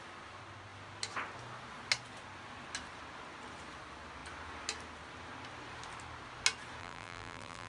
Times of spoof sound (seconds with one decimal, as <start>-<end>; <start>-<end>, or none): 6.8-7.7